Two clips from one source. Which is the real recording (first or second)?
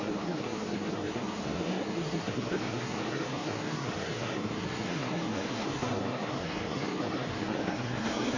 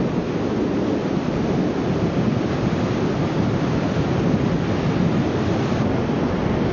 second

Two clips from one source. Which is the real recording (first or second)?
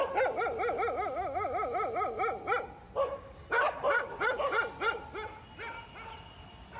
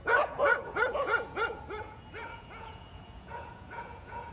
first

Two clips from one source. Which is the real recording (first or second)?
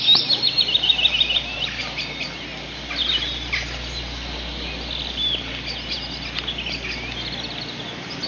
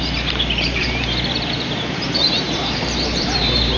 first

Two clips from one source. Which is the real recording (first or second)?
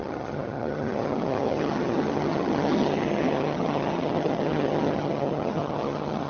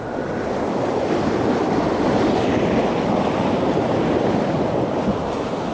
second